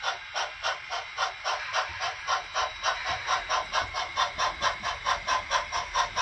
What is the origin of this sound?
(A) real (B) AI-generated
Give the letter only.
B